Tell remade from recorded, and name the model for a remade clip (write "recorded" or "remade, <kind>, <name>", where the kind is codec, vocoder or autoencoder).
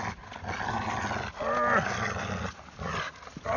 recorded